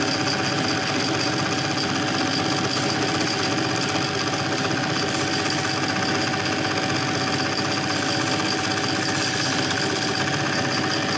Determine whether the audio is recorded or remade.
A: recorded